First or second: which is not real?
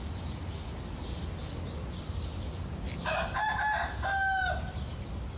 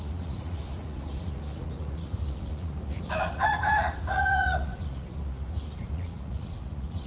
second